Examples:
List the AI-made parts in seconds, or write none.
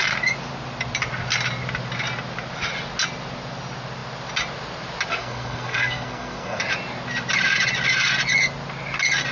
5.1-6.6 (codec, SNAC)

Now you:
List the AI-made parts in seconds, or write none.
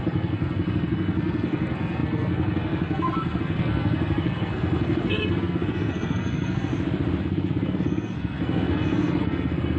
0.0-6.7 (codec, SNAC); 7.2-9.8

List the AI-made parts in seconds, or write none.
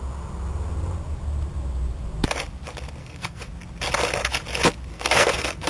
3.0-3.5 (codec, SNAC); 4.9-5.7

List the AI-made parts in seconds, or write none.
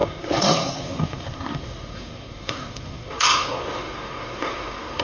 0.0-5.0 (codec, SNAC)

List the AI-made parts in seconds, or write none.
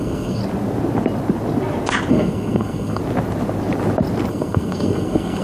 0.0-0.4 (codec, SNAC); 2.1-3.0; 4.3-5.4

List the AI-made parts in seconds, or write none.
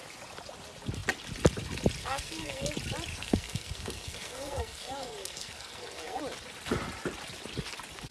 2.0-2.7 (codec, SNAC); 3.1-6.2